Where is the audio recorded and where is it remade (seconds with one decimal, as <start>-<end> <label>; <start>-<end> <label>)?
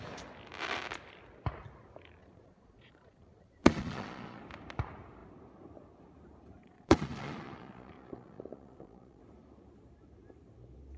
0.0-2.2 recorded; 2.2-4.4 remade; 4.4-6.6 recorded; 6.6-9.2 remade; 9.2-11.0 recorded